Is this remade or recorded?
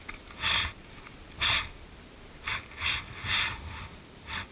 recorded